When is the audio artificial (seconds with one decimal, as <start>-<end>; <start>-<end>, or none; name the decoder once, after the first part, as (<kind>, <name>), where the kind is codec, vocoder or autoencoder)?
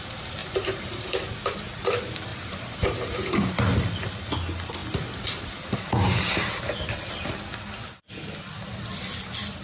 0.4-1.1 (vocoder, BigVGAN v2); 2.3-3.4